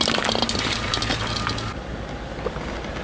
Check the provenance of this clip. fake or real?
real